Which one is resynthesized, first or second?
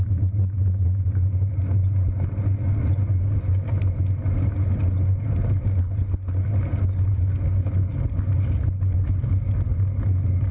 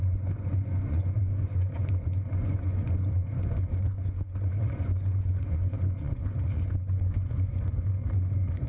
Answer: second